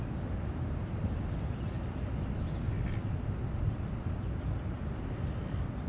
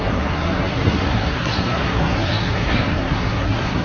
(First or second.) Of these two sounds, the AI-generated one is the second